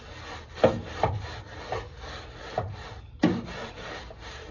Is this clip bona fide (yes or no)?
yes